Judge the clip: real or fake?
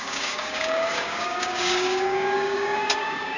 fake